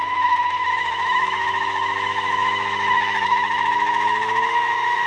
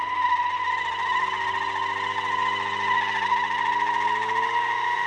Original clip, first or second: second